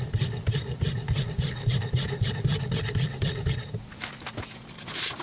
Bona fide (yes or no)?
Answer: yes